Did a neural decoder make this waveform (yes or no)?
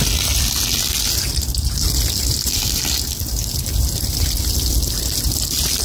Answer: no